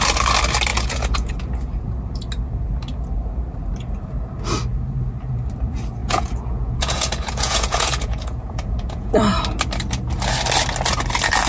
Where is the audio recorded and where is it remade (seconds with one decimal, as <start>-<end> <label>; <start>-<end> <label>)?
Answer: 0.0-0.7 recorded; 0.7-1.3 remade; 1.3-6.0 recorded; 6.0-9.1 remade; 9.1-11.5 recorded